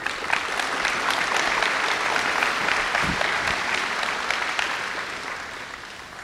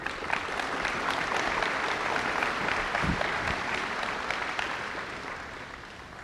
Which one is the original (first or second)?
first